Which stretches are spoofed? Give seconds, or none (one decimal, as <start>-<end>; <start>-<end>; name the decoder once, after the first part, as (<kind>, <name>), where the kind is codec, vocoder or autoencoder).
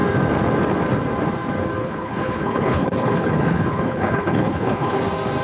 1.8-5.0 (codec, HILCodec)